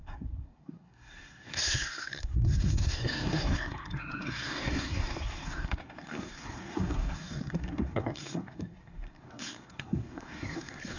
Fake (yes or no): yes